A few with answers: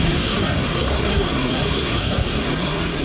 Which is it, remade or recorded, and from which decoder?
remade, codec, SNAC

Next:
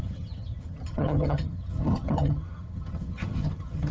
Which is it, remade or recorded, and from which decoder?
remade, vocoder, HiFi-GAN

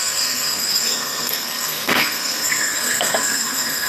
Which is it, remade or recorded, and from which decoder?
remade, codec, SNAC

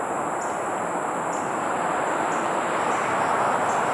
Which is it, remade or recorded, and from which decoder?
recorded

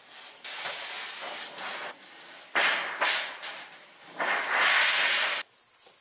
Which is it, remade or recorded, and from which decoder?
recorded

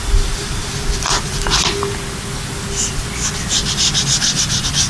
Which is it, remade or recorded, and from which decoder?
recorded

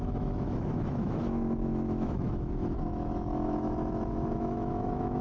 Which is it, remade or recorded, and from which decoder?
remade, autoencoder, DAC-VAE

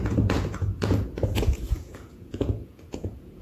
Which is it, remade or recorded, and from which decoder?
remade, vocoder, Vocos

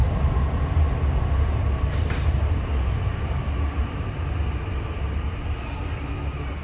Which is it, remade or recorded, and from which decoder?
recorded